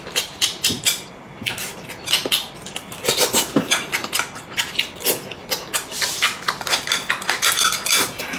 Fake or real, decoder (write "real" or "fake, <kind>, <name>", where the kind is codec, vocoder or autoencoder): real